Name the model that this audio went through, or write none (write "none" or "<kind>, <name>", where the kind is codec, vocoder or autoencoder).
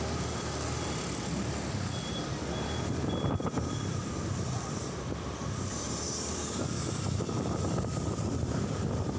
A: vocoder, BigVGAN v2